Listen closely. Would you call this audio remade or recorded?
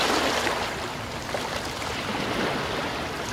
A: recorded